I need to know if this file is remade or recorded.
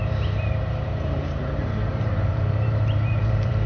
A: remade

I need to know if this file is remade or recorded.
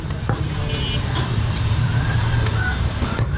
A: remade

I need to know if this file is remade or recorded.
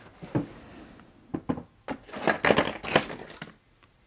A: recorded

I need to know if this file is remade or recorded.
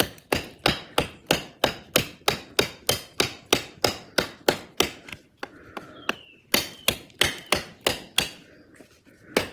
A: recorded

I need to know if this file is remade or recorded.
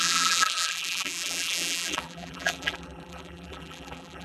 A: remade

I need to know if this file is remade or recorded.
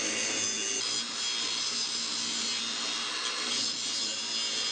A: recorded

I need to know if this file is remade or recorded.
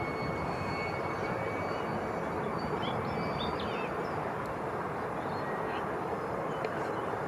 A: recorded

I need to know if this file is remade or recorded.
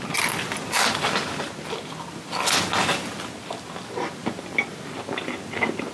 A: recorded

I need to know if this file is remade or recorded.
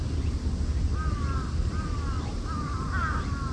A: recorded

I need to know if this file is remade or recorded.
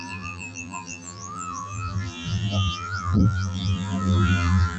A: remade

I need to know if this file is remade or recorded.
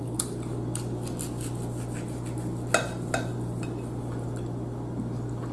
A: recorded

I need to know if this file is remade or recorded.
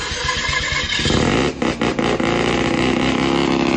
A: recorded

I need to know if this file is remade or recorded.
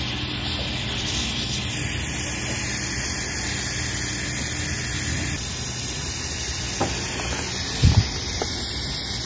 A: recorded